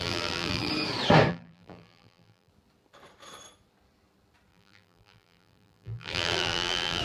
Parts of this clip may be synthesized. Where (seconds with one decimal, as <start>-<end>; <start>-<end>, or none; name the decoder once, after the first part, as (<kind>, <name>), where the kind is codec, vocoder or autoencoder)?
0.0-0.7 (vocoder, BigVGAN v2); 1.3-2.5; 4.5-7.0